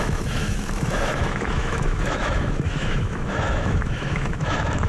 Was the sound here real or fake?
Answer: fake